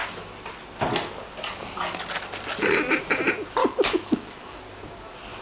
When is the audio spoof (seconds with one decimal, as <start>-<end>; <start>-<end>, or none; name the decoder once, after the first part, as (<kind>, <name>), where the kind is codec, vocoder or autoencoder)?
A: 3.6-4.6 (autoencoder, DAC-VAE)

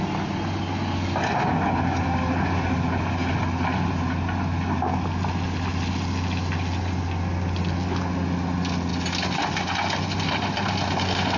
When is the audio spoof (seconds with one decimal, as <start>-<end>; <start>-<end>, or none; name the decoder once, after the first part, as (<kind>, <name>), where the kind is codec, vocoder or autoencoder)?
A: none

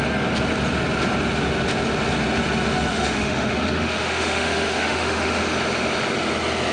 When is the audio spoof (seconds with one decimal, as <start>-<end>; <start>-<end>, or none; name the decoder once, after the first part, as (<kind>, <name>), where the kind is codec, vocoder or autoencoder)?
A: 2.9-5.4 (autoencoder, DAC-VAE)